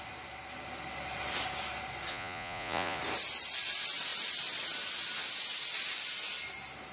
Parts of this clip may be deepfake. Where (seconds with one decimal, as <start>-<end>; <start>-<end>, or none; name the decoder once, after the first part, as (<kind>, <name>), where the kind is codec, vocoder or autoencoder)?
2.1-3.0 (vocoder, Vocos)